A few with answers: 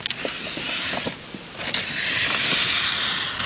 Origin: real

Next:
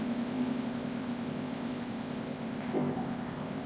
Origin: fake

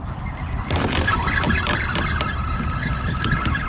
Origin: real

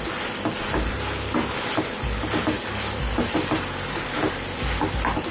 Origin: real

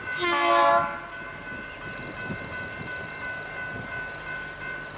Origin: real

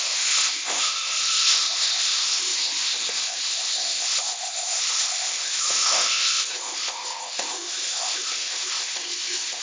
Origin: fake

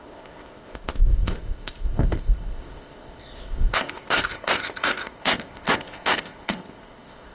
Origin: fake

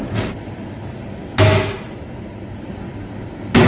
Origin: real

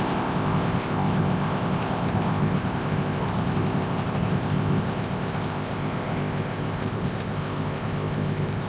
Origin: fake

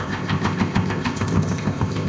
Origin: fake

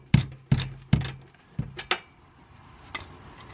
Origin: real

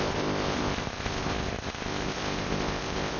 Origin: fake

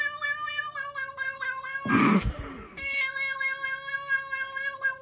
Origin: real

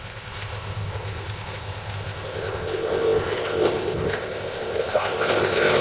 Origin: fake